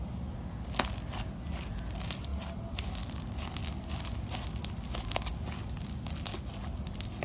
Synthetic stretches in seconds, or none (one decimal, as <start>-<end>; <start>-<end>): none